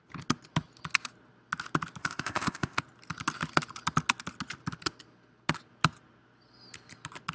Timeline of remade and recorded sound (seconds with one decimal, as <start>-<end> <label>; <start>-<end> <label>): 0.0-2.0 recorded; 2.0-2.8 remade; 2.8-7.3 recorded